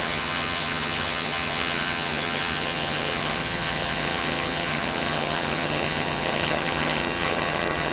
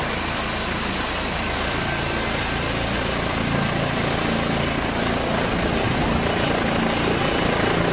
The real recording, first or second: second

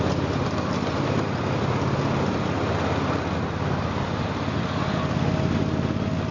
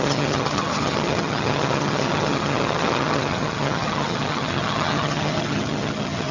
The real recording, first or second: first